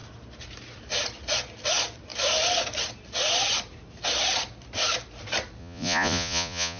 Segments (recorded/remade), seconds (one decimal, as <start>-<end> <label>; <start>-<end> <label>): 0.0-5.6 recorded; 5.6-6.8 remade